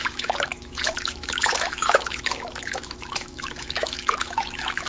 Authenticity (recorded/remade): remade